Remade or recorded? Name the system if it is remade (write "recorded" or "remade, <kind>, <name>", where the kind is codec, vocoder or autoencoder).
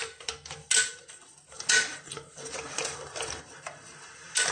recorded